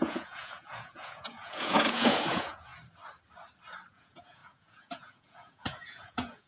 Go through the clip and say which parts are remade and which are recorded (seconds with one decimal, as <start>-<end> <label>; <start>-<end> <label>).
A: 0.0-2.7 remade; 2.7-3.9 recorded; 3.9-6.5 remade